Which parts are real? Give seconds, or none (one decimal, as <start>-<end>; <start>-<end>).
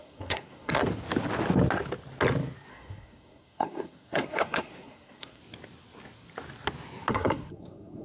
0.8-2.7; 5.4-7.1